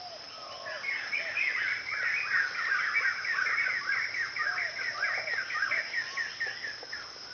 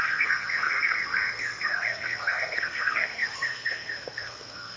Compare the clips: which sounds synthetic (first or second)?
second